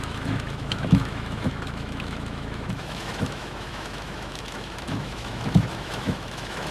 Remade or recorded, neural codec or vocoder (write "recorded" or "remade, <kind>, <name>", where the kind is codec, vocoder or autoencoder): remade, autoencoder, DAC-VAE